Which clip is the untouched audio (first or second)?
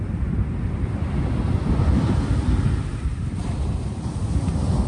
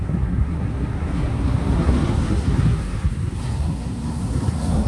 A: first